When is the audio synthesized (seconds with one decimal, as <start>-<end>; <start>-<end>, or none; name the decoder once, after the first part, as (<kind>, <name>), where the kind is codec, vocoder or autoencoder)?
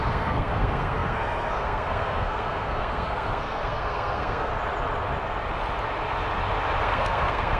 0.0-4.5 (codec, SNAC); 6.8-7.6